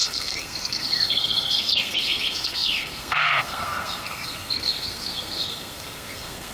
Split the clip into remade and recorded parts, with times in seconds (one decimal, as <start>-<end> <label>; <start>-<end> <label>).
0.0-6.5 remade